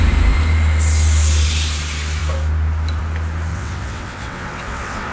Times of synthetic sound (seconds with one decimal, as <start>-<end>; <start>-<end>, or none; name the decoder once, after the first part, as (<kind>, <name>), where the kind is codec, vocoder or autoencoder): 3.5-5.1 (vocoder, WaveNeXt)